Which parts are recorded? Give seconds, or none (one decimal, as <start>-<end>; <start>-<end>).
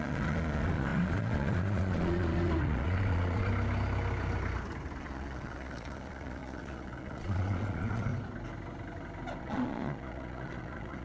3.5-5.0; 8.1-9.4